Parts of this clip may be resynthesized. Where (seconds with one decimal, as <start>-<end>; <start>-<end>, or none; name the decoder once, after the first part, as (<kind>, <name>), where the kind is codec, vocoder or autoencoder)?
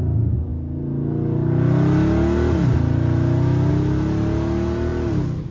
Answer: none